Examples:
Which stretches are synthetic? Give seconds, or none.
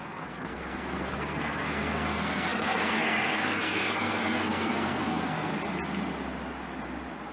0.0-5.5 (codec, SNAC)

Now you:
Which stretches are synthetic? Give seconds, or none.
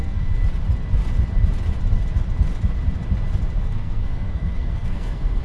0.0-0.4 (codec, SNAC); 3.6-5.4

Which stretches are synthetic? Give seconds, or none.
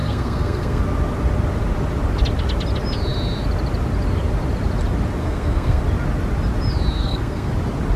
0.0-0.8 (codec, SNAC); 5.2-5.8; 7.0-7.5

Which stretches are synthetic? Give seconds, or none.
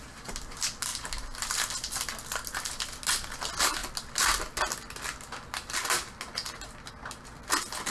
none